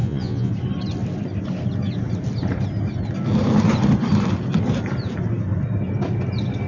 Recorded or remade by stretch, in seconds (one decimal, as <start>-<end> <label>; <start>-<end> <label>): 0.0-0.5 remade; 0.5-6.7 recorded